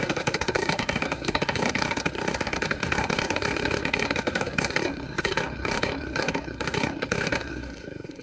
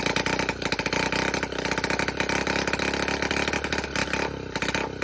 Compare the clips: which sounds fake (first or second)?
first